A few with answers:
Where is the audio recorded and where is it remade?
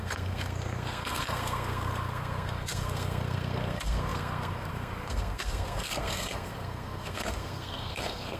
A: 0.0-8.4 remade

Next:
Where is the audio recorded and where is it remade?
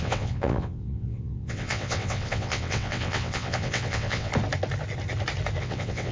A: 0.0-4.3 remade; 4.3-5.6 recorded; 5.6-6.1 remade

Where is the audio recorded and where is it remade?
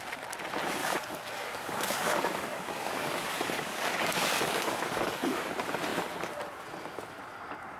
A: 0.0-0.8 recorded; 0.8-5.5 remade; 5.5-7.8 recorded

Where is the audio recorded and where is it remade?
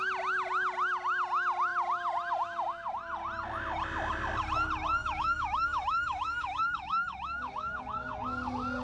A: 0.0-5.0 recorded; 5.0-7.8 remade; 7.8-8.8 recorded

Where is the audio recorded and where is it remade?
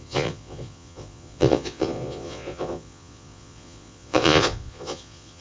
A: 0.0-5.4 remade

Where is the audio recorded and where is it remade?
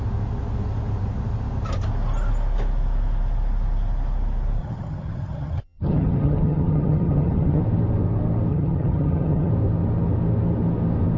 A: 0.0-4.6 recorded; 4.6-7.6 remade; 7.6-8.5 recorded; 8.5-9.5 remade; 9.5-11.2 recorded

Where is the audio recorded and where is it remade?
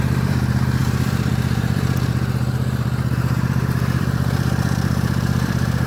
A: 0.0-5.9 remade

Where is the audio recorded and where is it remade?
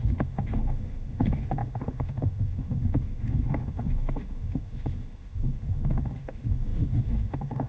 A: 0.0-7.7 remade